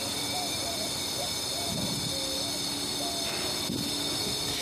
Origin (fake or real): real